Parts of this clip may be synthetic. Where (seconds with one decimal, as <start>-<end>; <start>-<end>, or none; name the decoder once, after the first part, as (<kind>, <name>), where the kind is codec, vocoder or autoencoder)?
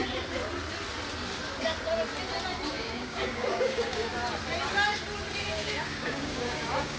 2.7-4.1 (codec, DAC); 5.4-7.0